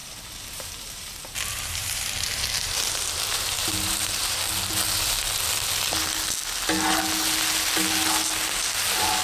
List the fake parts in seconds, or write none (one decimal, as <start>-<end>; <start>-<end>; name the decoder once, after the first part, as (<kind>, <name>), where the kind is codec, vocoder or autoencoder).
0.0-4.4 (vocoder, BigVGAN v2)